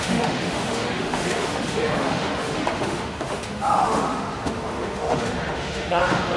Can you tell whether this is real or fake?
fake